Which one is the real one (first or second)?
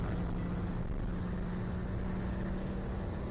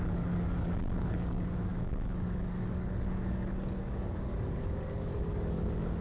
first